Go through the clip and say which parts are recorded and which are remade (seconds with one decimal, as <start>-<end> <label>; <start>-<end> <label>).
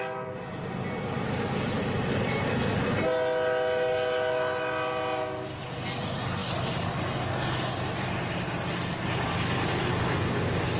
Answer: 0.0-10.8 recorded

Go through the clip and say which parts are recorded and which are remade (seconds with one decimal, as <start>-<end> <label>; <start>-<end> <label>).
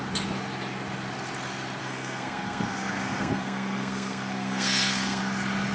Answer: 0.0-1.8 recorded; 1.8-5.2 remade; 5.2-5.7 recorded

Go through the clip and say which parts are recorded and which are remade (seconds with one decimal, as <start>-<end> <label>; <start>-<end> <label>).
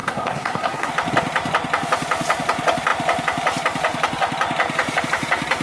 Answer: 0.0-0.9 remade; 0.9-5.6 recorded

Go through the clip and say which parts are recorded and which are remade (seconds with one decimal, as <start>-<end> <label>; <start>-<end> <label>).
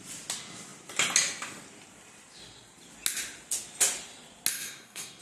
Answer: 0.0-4.5 recorded; 4.5-5.2 remade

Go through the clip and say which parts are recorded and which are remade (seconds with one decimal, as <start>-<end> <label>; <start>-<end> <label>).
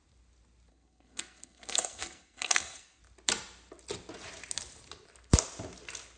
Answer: 0.0-0.7 recorded; 0.7-3.0 remade; 3.0-6.2 recorded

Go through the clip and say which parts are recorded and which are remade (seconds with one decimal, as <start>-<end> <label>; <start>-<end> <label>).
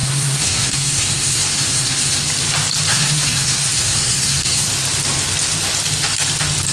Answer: 0.0-2.3 remade; 2.3-2.9 recorded; 2.9-4.7 remade; 4.7-6.7 recorded